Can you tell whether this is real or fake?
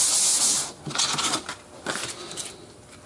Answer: real